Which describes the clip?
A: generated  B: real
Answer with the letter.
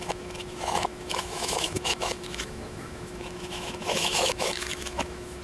A